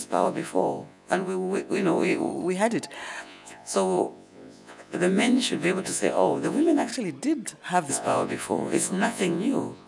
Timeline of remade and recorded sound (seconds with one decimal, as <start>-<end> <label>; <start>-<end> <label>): 0.0-2.3 remade; 2.3-3.2 recorded; 3.2-6.9 remade; 6.9-7.9 recorded; 7.9-9.9 remade